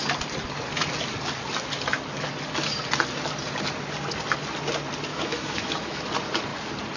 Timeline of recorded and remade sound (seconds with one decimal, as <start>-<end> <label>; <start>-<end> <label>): 0.0-5.1 recorded; 5.1-6.1 remade; 6.1-7.0 recorded